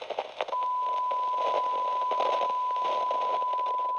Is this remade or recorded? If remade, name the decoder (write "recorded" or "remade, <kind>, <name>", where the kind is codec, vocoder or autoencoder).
recorded